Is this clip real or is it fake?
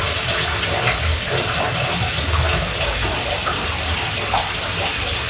real